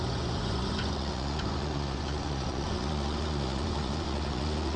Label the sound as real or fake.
fake